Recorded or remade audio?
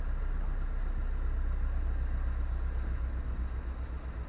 recorded